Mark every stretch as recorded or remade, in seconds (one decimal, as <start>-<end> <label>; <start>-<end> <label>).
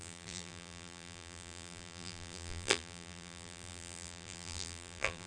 0.0-5.3 remade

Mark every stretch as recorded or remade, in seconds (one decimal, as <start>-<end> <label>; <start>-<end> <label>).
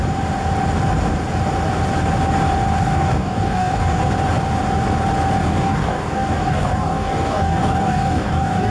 0.0-2.8 recorded; 2.8-4.0 remade; 4.0-5.4 recorded; 5.4-8.7 remade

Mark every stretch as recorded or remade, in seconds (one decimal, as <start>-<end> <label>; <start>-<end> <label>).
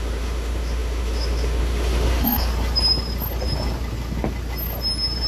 0.0-2.5 remade; 2.5-5.3 recorded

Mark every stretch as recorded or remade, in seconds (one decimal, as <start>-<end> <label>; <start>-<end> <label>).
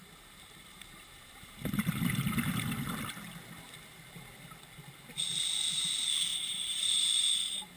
0.0-1.9 remade; 1.9-6.3 recorded; 6.3-7.8 remade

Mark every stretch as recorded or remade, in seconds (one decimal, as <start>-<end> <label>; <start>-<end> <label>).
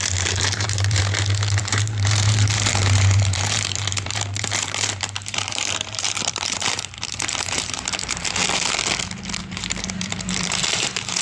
0.0-1.0 remade; 1.0-1.6 recorded; 1.6-8.4 remade; 8.4-9.4 recorded; 9.4-11.2 remade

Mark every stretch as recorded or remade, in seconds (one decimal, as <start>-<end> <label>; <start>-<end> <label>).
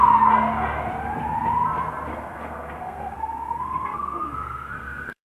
0.0-2.1 recorded; 2.1-5.3 remade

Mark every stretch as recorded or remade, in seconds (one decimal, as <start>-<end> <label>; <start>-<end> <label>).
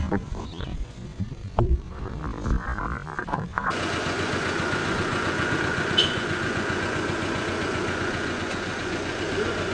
0.0-2.2 remade; 2.2-3.2 recorded; 3.2-9.7 remade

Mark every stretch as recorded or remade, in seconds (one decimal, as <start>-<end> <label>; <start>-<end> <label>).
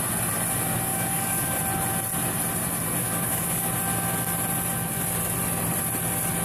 0.0-0.9 recorded; 0.9-1.6 remade; 1.6-3.0 recorded; 3.0-3.7 remade; 3.7-6.4 recorded